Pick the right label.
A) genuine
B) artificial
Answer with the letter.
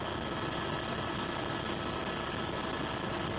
A